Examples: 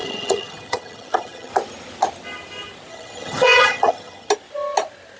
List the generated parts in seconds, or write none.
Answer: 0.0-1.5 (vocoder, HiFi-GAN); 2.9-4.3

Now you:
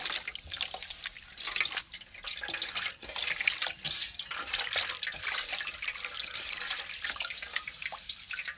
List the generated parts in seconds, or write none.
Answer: 3.6-8.6 (vocoder, BigVGAN v2)

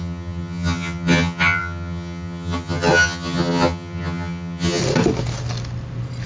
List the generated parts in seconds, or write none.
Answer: 0.0-4.8 (vocoder, HiFi-GAN)

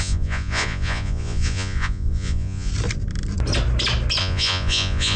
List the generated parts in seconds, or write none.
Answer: 0.0-2.7 (vocoder, Vocos); 4.2-5.2

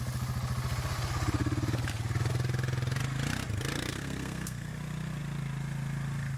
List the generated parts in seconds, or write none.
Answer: 3.9-4.7 (codec, SNAC)

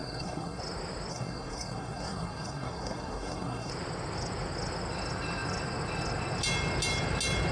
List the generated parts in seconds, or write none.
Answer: 0.0-0.6 (codec, SNAC); 1.1-3.7

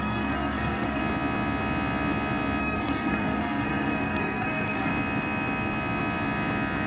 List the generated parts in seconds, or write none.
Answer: 0.0-1.0 (codec, SNAC); 2.6-4.9